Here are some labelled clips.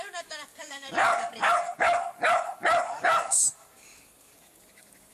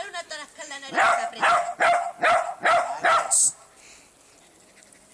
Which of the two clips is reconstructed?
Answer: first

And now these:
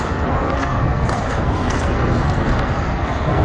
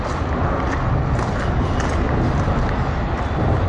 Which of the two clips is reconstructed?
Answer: first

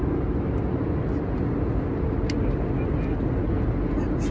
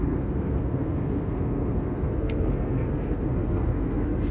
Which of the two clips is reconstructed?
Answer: second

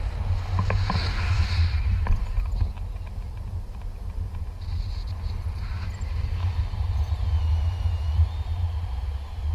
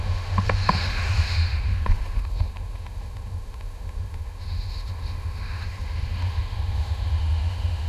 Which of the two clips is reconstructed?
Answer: second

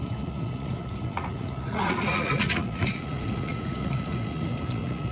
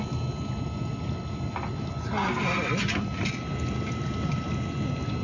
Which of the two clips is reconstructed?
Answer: first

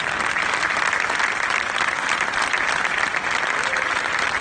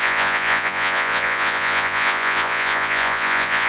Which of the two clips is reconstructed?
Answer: second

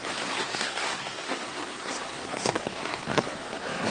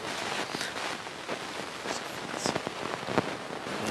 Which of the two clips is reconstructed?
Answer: first